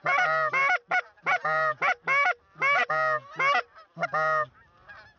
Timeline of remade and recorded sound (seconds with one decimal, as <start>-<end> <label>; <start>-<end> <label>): 0.0-5.2 recorded